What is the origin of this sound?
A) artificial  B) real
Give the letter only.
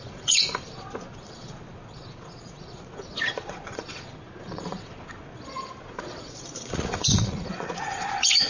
A